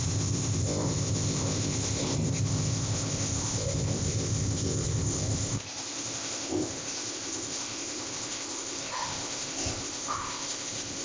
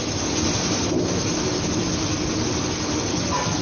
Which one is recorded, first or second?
second